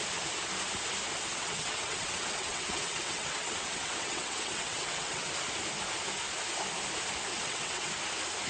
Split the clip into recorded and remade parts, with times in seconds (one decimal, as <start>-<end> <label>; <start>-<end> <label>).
0.0-1.3 recorded; 1.3-5.3 remade; 5.3-7.3 recorded; 7.3-7.9 remade; 7.9-8.5 recorded

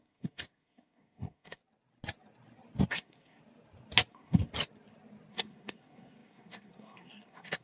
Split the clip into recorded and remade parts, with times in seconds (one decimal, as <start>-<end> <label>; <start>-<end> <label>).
0.0-1.6 remade; 1.6-2.9 recorded; 2.9-3.4 remade; 3.4-4.1 recorded; 4.1-4.5 remade; 4.5-5.3 recorded; 5.3-7.6 remade

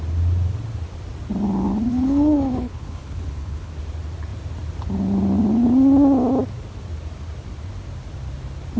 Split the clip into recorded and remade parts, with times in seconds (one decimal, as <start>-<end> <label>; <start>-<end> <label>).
0.0-1.9 recorded; 1.9-3.7 remade; 3.7-8.8 recorded

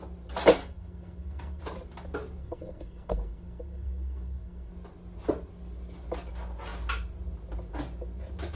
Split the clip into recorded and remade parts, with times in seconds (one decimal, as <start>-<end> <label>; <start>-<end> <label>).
0.0-0.6 recorded; 0.6-1.6 remade; 1.6-2.4 recorded; 2.4-4.7 remade; 4.7-8.6 recorded